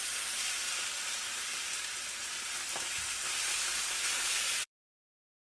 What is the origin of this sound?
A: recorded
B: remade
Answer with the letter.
B